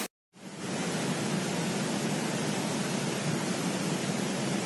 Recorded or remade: recorded